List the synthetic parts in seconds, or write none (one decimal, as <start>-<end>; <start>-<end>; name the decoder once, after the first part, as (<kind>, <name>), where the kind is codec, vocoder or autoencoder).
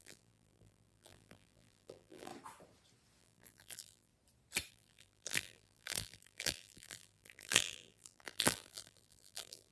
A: 0.0-2.3 (vocoder, BigVGAN v2); 3.2-4.1; 4.7-9.7